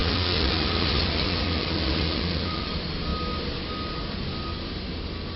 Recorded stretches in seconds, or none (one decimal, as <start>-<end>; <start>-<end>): 2.7-5.4